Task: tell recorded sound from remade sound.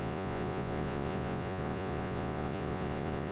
remade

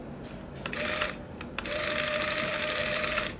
recorded